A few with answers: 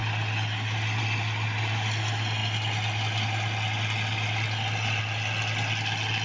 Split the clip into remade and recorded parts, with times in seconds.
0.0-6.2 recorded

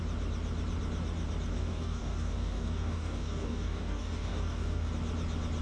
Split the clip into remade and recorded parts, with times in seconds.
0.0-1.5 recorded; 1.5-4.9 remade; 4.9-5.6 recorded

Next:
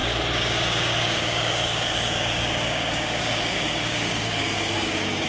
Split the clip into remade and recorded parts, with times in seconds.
0.0-5.3 remade

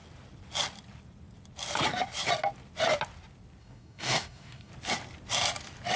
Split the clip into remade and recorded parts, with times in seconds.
0.0-3.6 recorded; 3.6-4.7 remade; 4.7-6.0 recorded